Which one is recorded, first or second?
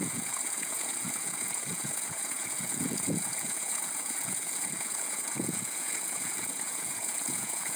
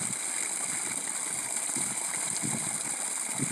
second